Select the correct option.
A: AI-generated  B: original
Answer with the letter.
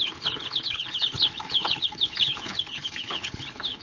A